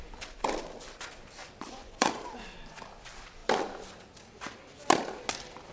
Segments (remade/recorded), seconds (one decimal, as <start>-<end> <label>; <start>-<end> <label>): 0.0-1.4 recorded; 1.4-2.2 remade; 2.2-5.7 recorded